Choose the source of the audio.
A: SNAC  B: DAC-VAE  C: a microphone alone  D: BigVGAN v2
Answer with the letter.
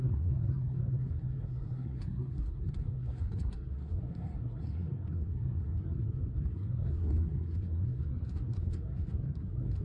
A